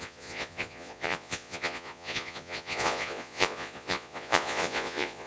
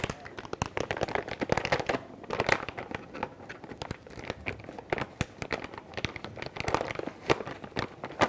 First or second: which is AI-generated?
first